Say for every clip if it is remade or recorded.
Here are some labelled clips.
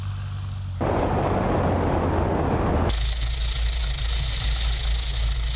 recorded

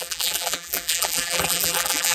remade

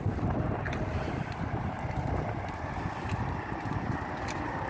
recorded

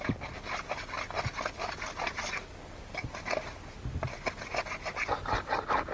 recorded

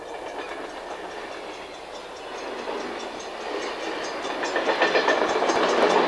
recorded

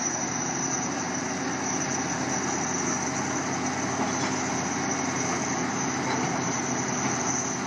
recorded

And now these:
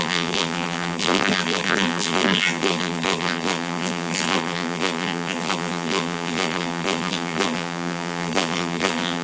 remade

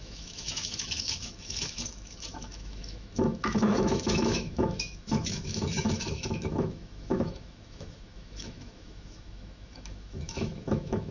remade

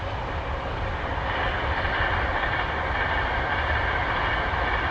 recorded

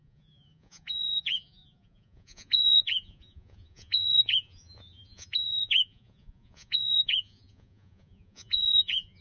remade